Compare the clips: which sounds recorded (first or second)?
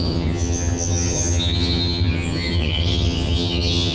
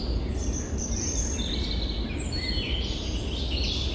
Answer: second